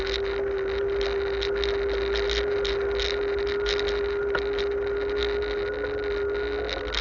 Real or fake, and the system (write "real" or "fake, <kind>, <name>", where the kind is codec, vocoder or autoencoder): real